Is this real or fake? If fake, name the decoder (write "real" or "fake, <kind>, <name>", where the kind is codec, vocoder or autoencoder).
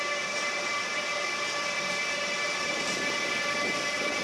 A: real